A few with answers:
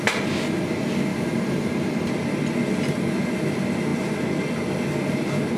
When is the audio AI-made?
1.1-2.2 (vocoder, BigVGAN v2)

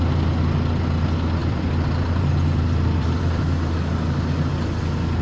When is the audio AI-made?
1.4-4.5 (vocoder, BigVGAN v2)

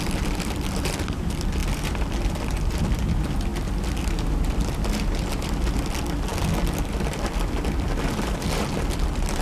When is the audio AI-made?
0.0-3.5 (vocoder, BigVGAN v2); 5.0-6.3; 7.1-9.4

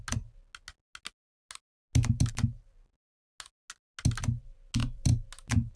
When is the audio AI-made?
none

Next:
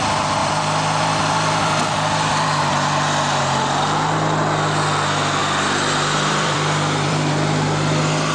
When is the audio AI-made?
0.4-3.4 (vocoder, BigVGAN v2); 5.4-7.3

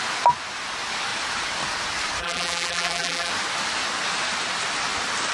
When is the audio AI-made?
2.2-3.3 (vocoder, BigVGAN v2)

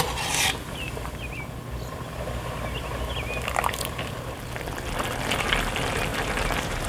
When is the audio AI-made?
6.1-6.9 (vocoder, BigVGAN v2)